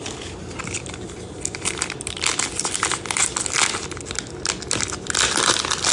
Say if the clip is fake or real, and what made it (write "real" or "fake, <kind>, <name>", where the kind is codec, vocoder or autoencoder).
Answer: real